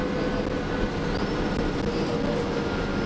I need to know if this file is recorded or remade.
recorded